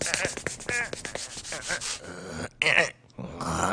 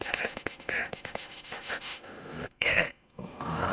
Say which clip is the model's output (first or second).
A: second